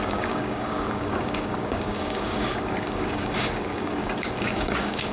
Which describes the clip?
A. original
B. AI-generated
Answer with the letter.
B